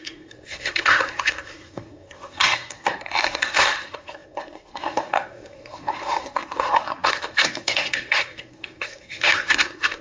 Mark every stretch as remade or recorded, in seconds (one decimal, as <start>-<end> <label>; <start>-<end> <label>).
0.0-10.0 remade